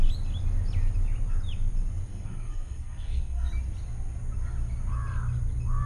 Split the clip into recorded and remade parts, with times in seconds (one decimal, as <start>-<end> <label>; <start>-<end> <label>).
0.0-2.1 recorded; 2.1-3.5 remade; 3.5-5.9 recorded